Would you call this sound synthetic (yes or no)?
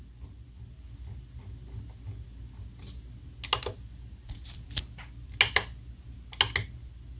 no